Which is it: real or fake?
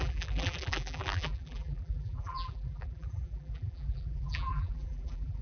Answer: fake